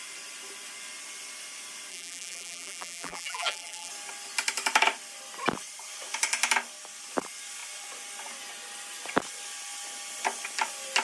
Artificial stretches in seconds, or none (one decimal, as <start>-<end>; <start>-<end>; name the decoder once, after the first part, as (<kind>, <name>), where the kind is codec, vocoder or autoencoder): 1.9-3.9 (vocoder, BigVGAN v2)